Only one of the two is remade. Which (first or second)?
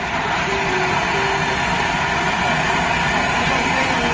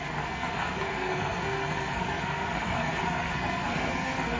second